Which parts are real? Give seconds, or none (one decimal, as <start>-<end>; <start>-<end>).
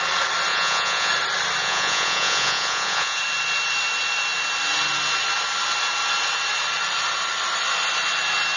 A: 0.0-0.5; 1.1-1.6; 3.2-8.6